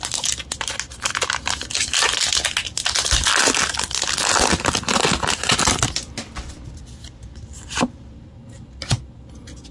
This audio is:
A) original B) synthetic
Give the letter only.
A